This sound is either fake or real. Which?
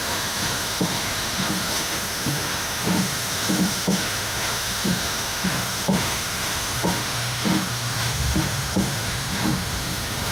fake